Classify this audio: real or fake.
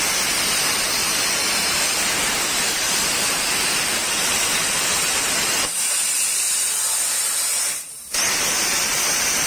real